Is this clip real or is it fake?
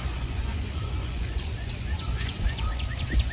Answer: fake